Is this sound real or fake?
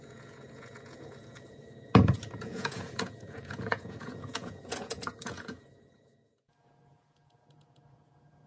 fake